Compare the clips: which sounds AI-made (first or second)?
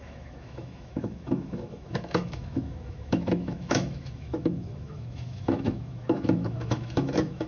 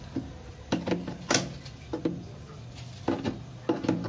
first